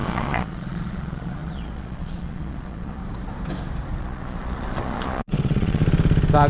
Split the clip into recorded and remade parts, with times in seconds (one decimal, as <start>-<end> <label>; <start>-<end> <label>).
0.0-3.0 remade; 3.0-4.0 recorded; 4.0-5.8 remade; 5.8-6.5 recorded